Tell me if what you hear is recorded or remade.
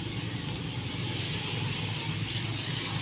recorded